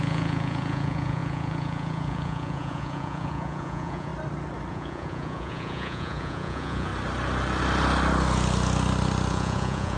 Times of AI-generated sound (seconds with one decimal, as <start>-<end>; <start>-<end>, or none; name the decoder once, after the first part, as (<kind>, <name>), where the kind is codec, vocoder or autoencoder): 0.0-4.1 (vocoder, Vocos); 4.7-6.9; 9.3-10.0